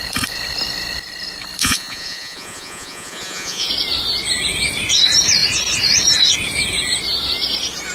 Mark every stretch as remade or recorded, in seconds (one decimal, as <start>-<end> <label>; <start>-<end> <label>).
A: 0.0-1.6 recorded; 1.6-3.7 remade; 3.7-7.9 recorded